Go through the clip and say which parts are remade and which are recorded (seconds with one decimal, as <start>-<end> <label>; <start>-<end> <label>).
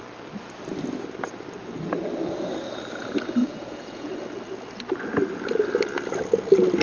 0.0-3.4 recorded; 3.4-4.1 remade; 4.1-6.8 recorded